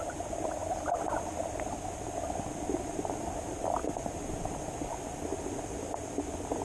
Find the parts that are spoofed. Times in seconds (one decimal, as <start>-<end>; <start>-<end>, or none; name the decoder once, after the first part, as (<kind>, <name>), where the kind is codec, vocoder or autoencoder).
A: none

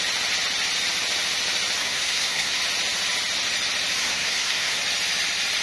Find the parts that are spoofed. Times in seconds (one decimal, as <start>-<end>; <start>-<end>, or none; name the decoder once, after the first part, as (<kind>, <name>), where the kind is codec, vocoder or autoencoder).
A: 1.8-2.6 (codec, SNAC); 4.0-4.8

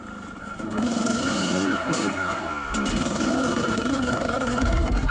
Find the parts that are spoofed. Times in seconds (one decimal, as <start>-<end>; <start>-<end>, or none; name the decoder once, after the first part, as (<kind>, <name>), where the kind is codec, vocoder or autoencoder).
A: 0.4-2.5 (codec, SNAC); 2.9-5.1

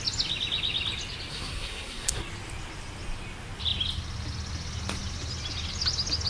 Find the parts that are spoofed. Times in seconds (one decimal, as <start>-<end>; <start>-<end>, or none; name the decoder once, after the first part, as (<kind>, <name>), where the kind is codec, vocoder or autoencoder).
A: 1.3-2.2 (codec, SNAC)